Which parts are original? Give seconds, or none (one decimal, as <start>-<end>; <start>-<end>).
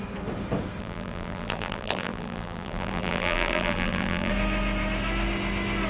0.0-0.8; 4.3-5.9